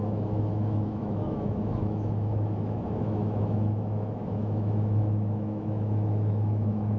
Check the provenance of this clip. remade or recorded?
remade